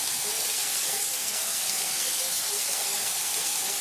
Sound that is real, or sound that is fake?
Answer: fake